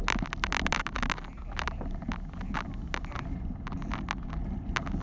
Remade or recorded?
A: recorded